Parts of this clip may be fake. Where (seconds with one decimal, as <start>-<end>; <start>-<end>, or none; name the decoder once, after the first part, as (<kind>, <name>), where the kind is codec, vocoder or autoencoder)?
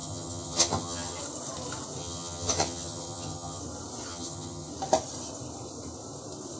0.0-1.2 (vocoder, HiFi-GAN); 2.0-3.6; 4.1-4.7